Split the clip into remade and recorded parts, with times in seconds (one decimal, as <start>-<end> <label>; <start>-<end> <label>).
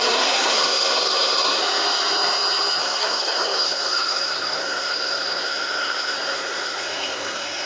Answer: 0.0-1.6 remade; 1.6-2.8 recorded; 2.8-7.7 remade